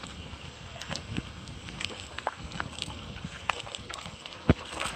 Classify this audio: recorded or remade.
remade